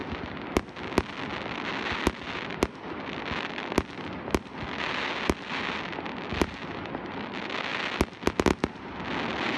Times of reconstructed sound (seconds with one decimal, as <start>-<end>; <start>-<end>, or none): none